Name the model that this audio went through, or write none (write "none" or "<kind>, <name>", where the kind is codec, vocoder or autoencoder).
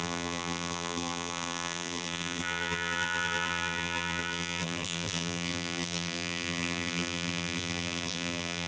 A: vocoder, BigVGAN v2